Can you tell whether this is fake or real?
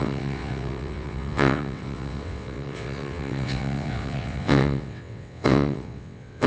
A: fake